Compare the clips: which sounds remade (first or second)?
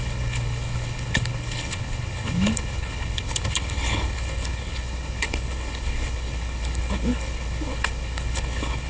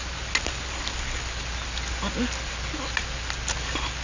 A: first